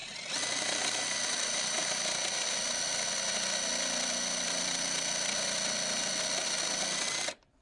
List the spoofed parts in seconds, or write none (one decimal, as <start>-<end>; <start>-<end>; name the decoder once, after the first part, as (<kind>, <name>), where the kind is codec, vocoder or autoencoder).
none

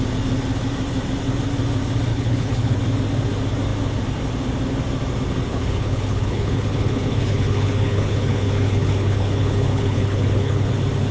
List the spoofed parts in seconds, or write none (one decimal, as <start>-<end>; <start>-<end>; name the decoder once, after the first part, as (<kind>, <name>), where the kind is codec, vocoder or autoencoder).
2.1-2.8 (codec, HILCodec); 5.5-10.7